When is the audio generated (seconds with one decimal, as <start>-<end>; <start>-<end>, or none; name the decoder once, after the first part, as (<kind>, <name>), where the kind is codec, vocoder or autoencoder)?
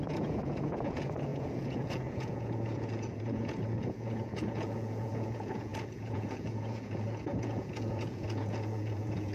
0.0-9.3 (vocoder, Vocos)